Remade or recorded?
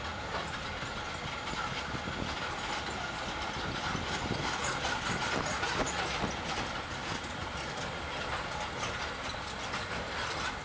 recorded